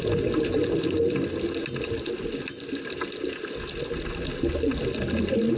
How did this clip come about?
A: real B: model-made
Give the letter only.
A